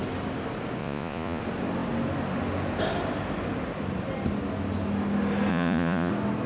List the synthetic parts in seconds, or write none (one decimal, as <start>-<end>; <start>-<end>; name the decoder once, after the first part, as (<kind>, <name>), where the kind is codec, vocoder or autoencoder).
0.8-1.4 (vocoder, Vocos); 5.5-6.1